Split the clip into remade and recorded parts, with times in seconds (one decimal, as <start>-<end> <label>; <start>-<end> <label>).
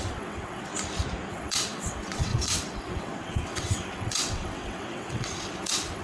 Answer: 0.0-0.7 remade; 0.7-1.3 recorded; 1.3-6.0 remade